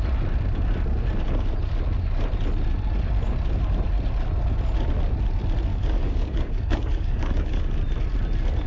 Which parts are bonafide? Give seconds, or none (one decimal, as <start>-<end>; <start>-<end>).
0.0-5.7; 7.6-8.7